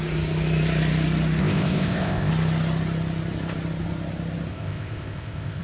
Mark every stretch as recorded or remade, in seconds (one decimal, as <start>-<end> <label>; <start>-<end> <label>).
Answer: 0.0-1.4 recorded; 1.4-2.3 remade; 2.3-4.5 recorded; 4.5-5.6 remade